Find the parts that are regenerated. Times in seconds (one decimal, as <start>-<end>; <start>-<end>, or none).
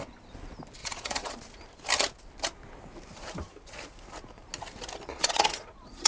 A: 0.8-1.4; 5.1-6.1